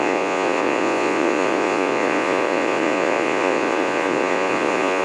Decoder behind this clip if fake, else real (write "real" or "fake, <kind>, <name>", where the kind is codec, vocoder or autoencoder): fake, vocoder, Vocos